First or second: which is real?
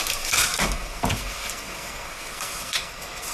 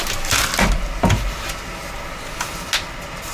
second